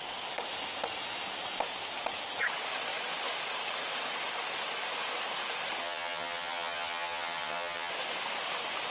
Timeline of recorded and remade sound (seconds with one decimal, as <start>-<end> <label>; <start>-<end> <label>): 0.0-5.8 recorded; 5.8-7.9 remade; 7.9-8.9 recorded